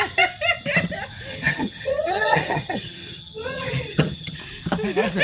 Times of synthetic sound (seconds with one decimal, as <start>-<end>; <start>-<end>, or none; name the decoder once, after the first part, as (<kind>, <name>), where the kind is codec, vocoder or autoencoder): 1.3-4.4 (vocoder, HiFi-GAN)